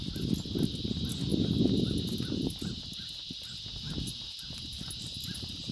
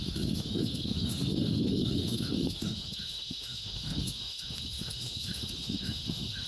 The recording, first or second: first